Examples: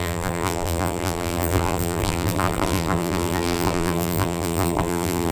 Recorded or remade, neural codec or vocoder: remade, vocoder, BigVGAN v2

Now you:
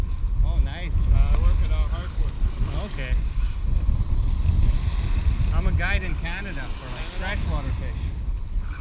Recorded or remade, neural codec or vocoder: recorded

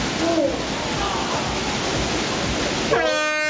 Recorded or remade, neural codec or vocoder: recorded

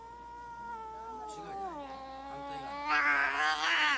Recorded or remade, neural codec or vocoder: recorded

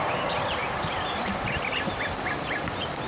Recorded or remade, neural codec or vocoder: recorded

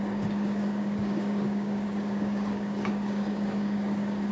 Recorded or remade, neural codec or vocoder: remade, codec, DAC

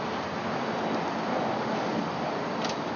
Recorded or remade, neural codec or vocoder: recorded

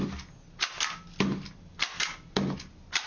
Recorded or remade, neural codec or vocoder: recorded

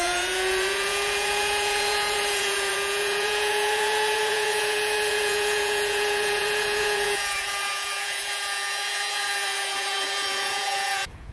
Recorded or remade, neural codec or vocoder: remade, vocoder, Vocos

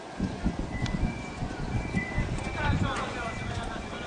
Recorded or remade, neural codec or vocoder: remade, vocoder, Vocos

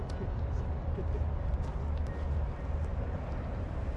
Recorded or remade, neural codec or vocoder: recorded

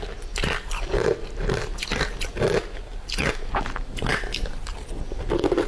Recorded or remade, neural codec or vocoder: recorded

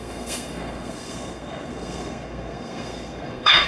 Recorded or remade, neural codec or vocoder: remade, codec, SNAC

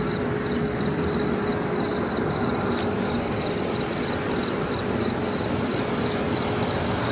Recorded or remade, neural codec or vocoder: recorded